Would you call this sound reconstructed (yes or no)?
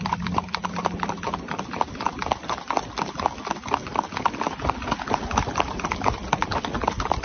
no